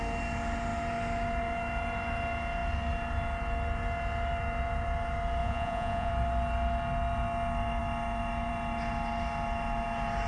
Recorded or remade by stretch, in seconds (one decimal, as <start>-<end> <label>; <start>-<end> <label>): 0.0-5.4 recorded; 5.4-6.1 remade; 6.1-10.3 recorded